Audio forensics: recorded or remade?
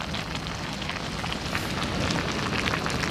recorded